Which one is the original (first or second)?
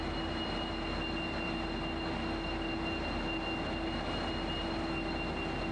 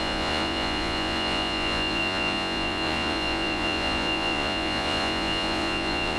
first